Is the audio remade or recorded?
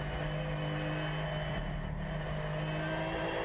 recorded